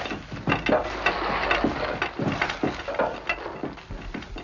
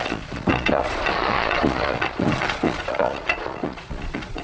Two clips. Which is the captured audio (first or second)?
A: first